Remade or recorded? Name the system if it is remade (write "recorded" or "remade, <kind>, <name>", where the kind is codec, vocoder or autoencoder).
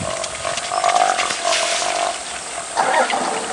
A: recorded